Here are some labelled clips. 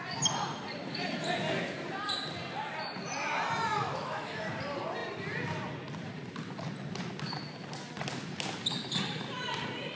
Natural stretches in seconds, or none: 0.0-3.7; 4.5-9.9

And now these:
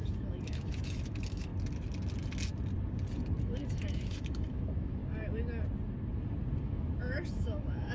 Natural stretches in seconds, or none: 1.5-3.4; 5.0-6.6